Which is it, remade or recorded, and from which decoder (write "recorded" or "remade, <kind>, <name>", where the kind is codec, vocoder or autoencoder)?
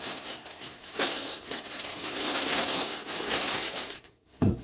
remade, codec, SNAC